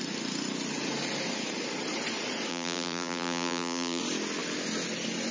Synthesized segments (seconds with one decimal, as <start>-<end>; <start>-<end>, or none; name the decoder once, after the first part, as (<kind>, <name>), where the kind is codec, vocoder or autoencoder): 2.5-4.0 (vocoder, BigVGAN v2)